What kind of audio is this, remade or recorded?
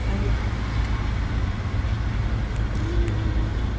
recorded